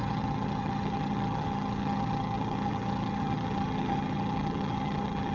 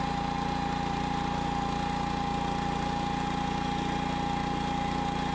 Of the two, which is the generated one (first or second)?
first